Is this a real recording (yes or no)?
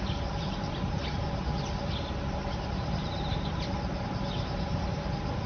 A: yes